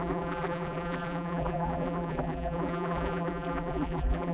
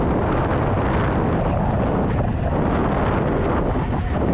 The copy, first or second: first